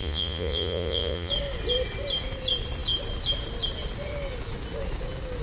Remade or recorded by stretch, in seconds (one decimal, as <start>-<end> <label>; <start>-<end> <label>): 0.0-1.3 remade; 1.3-5.4 recorded